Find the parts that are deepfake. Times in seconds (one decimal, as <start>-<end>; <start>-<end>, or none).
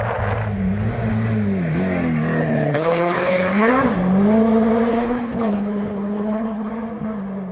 2.4-3.7; 4.9-6.7